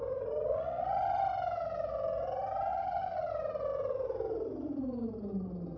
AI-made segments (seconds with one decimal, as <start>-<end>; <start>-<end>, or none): 0.5-1.2; 2.7-3.3